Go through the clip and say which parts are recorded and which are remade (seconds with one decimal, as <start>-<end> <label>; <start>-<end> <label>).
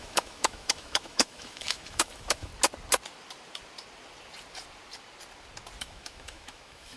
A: 0.0-2.5 remade; 2.5-5.8 recorded; 5.8-7.0 remade